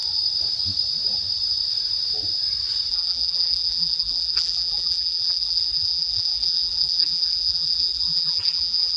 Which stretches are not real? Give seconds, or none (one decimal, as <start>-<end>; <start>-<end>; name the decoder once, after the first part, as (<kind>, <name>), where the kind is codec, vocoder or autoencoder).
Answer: 2.9-9.0 (vocoder, BigVGAN v2)